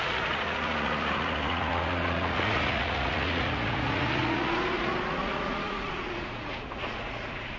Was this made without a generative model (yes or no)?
no